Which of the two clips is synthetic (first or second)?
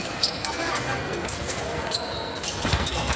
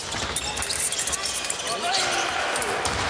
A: first